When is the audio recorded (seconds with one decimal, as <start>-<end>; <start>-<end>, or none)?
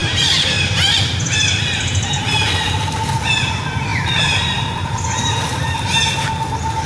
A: 1.6-6.9